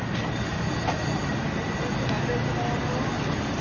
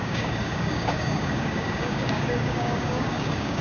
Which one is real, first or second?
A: first